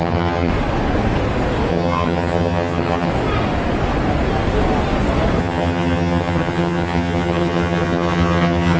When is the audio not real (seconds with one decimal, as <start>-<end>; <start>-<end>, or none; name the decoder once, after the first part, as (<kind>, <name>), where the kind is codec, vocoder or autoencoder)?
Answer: 0.0-0.5 (vocoder, HiFi-GAN); 1.7-3.1; 5.4-8.8